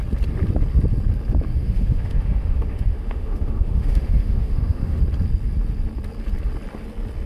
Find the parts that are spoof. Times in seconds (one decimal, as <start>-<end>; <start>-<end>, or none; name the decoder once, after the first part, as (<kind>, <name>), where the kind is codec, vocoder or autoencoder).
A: 1.6-5.0 (autoencoder, DAC-VAE)